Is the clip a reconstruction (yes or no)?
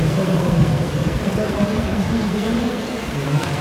yes